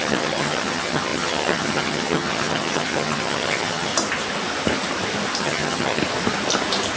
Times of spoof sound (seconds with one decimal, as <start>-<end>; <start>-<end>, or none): 0.0-3.9; 5.4-6.0